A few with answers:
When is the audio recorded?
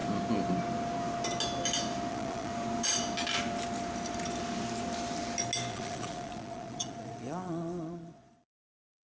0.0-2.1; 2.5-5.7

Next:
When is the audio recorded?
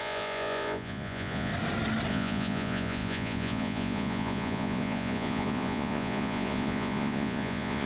1.5-2.1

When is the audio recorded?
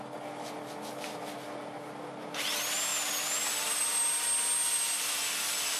0.0-5.8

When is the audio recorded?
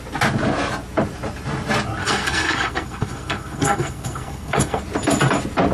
0.0-2.0; 4.8-5.7